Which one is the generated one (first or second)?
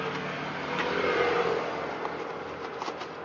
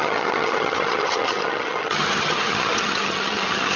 second